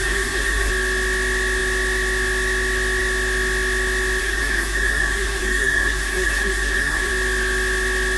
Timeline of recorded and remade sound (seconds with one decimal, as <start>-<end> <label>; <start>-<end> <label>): 0.0-0.7 remade; 0.7-4.2 recorded; 4.2-7.1 remade; 7.1-8.2 recorded